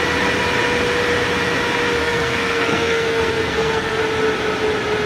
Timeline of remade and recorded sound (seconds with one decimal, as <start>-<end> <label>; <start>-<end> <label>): 0.0-2.0 recorded; 2.0-4.0 remade; 4.0-5.1 recorded